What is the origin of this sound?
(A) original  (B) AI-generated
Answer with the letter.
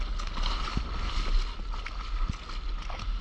A